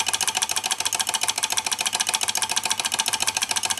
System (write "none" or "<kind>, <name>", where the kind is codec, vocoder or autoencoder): none